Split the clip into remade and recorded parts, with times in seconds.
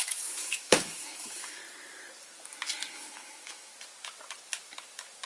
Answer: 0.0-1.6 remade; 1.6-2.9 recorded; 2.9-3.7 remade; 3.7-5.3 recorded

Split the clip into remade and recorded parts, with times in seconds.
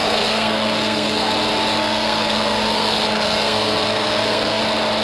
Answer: 0.0-1.3 remade; 1.3-1.8 recorded; 1.8-4.6 remade; 4.6-5.0 recorded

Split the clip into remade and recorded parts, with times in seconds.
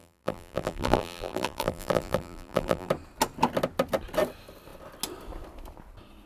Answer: 0.0-2.9 remade; 2.9-6.3 recorded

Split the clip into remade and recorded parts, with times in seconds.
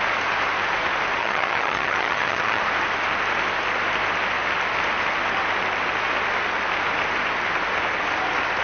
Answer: 0.0-1.2 recorded; 1.2-2.6 remade; 2.6-8.6 recorded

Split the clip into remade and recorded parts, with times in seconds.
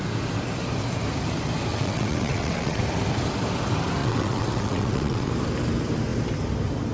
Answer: 0.0-1.7 recorded; 1.7-2.8 remade; 2.8-4.0 recorded; 4.0-5.3 remade; 5.3-6.9 recorded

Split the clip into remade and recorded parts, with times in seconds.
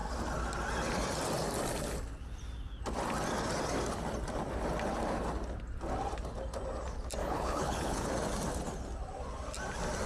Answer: 0.0-7.2 recorded; 7.2-8.1 remade; 8.1-10.1 recorded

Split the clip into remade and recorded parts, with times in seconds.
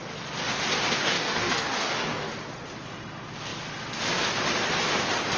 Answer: 0.0-1.0 recorded; 1.0-2.3 remade; 2.3-5.4 recorded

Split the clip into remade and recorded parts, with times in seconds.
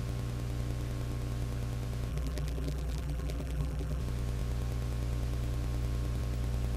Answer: 0.0-2.1 recorded; 2.1-4.0 remade; 4.0-6.8 recorded